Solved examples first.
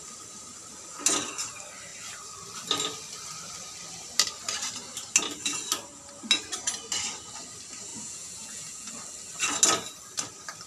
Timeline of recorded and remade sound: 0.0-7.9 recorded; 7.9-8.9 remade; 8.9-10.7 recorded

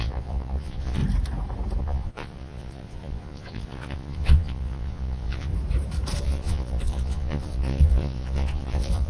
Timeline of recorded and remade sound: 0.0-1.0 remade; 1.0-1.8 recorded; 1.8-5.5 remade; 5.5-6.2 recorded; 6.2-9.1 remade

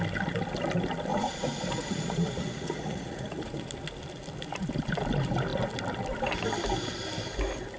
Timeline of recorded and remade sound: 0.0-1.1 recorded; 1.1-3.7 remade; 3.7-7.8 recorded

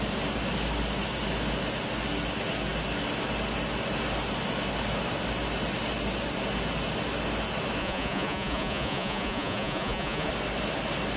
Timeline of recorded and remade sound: 0.0-7.8 recorded; 7.8-10.3 remade; 10.3-11.2 recorded

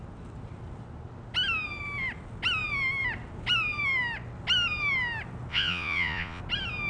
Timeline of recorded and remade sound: 0.0-5.5 recorded; 5.5-6.4 remade; 6.4-6.9 recorded

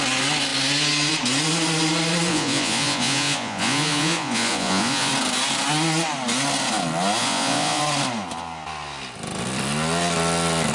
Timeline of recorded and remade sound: 0.0-2.3 recorded; 2.3-5.1 remade; 5.1-7.2 recorded; 7.2-7.8 remade; 7.8-10.7 recorded